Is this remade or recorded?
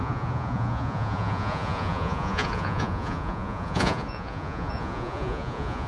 remade